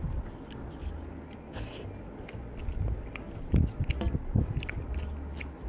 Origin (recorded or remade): recorded